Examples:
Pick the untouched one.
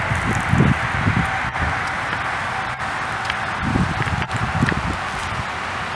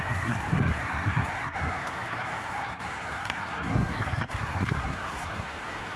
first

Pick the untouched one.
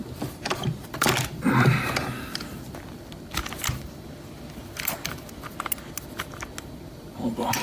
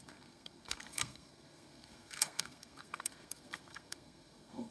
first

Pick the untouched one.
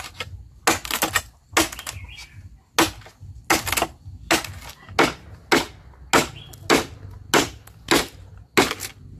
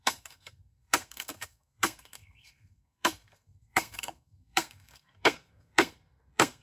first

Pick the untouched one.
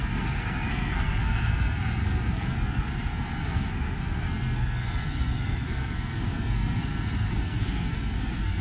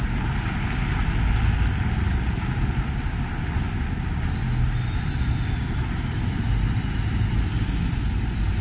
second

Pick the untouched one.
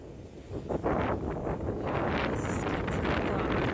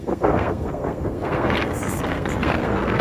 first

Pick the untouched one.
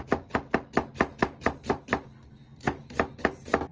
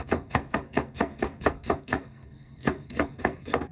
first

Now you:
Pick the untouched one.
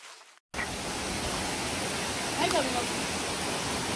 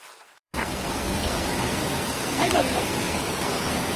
first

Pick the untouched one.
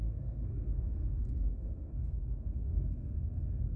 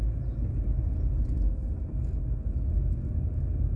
second